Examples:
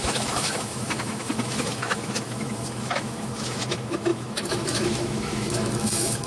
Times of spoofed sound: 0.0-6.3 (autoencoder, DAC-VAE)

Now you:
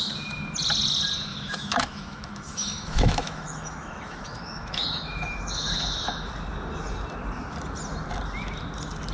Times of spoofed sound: 1.3-6.3 (autoencoder, DAC-VAE)

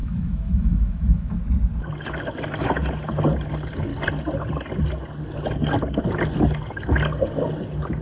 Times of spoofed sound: 0.0-1.4 (autoencoder, DAC-VAE)

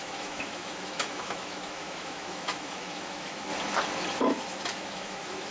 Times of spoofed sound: 0.0-3.5 (autoencoder, DAC-VAE); 4.2-5.5

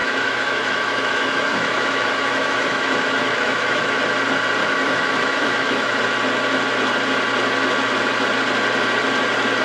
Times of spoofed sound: 0.0-4.0 (autoencoder, DAC-VAE); 4.6-6.0

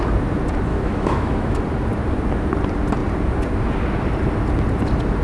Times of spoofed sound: 0.7-1.6 (autoencoder, DAC-VAE)